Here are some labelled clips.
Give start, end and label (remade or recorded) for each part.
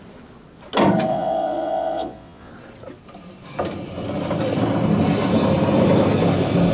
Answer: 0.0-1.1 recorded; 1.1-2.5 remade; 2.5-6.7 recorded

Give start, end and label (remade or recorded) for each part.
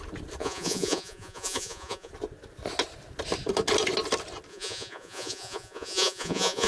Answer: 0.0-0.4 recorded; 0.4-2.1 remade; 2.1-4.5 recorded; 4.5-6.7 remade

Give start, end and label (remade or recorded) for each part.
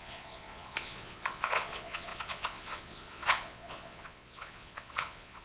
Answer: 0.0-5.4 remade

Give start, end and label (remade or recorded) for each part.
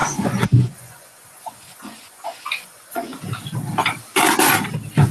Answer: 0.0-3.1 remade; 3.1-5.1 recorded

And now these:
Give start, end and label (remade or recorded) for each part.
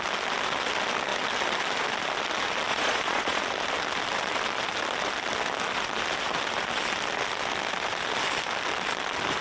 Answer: 0.0-2.7 recorded; 2.7-3.4 remade; 3.4-9.4 recorded